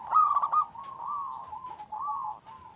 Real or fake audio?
real